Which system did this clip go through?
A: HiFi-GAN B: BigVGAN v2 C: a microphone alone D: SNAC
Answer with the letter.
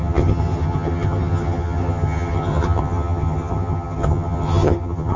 A